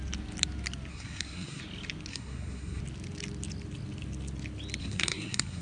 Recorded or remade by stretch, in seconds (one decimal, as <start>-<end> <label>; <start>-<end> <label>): 0.0-0.9 recorded; 0.9-1.6 remade; 1.6-2.1 recorded; 2.1-2.8 remade; 2.8-4.8 recorded; 4.8-5.6 remade